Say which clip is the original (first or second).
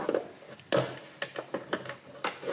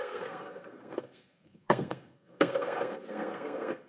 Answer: first